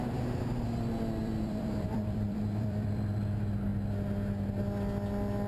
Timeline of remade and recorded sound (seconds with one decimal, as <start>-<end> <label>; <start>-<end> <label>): 0.0-1.2 recorded; 1.2-3.2 remade; 3.2-5.5 recorded